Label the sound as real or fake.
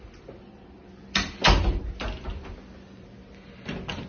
real